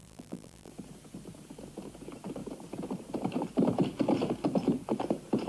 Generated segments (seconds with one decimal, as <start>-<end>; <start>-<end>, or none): 0.0-0.7